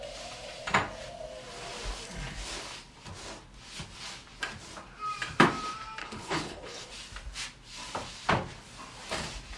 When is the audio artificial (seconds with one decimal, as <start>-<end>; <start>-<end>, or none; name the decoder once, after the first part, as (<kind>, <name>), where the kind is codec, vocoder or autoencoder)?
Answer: 6.0-6.9 (codec, HILCodec)